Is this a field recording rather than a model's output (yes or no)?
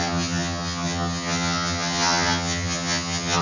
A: no